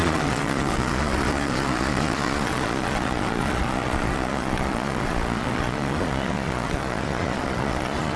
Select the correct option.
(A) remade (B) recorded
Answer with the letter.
A